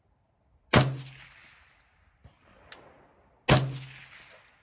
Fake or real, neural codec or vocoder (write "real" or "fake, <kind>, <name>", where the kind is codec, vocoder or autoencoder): real